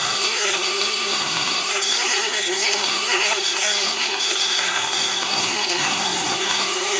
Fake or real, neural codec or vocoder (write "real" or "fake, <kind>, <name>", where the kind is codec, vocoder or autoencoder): fake, codec, SNAC